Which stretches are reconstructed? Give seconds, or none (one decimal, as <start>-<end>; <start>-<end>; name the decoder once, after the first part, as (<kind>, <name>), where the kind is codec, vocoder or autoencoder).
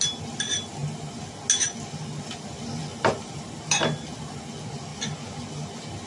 none